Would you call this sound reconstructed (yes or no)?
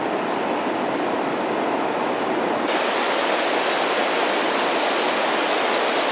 no